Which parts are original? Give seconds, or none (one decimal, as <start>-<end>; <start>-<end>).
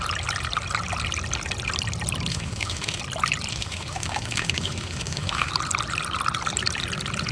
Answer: 0.0-2.3; 3.0-3.5; 5.5-7.3